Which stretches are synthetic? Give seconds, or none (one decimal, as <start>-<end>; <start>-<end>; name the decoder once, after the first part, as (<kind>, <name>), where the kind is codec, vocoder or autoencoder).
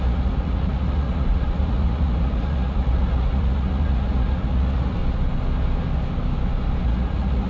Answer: 0.0-5.0 (vocoder, Vocos); 6.8-7.5